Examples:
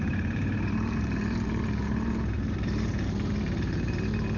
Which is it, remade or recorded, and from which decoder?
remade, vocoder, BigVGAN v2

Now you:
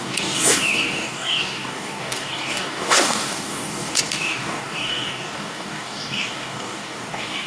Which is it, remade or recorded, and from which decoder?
remade, codec, DAC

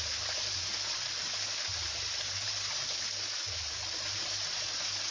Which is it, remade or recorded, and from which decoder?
recorded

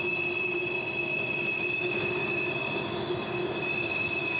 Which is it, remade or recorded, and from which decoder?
recorded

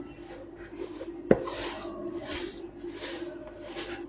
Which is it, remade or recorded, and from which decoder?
recorded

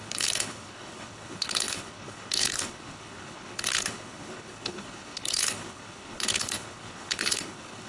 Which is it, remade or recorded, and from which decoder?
remade, codec, HILCodec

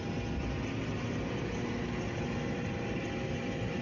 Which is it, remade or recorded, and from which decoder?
recorded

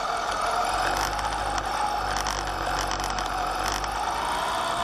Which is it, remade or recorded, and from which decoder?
recorded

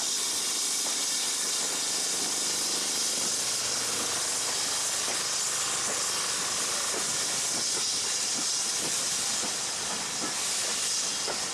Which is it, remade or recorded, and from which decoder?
recorded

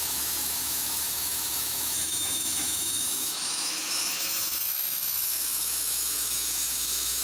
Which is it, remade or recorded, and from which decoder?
remade, autoencoder, DAC-VAE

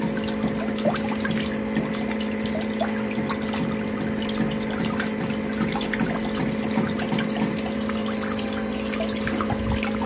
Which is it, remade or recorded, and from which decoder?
recorded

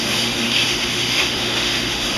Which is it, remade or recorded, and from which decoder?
remade, autoencoder, DAC-VAE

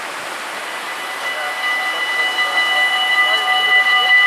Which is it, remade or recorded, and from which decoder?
recorded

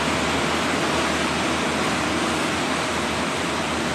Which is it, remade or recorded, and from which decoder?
recorded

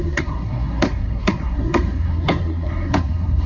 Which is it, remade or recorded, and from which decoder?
remade, codec, SNAC